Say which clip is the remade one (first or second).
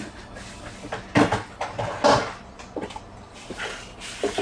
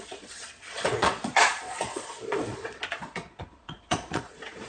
second